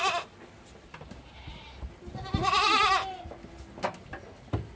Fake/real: real